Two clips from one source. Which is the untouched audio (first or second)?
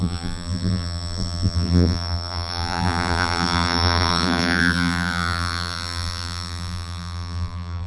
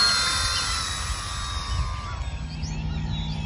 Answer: second